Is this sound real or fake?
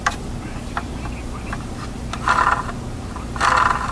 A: real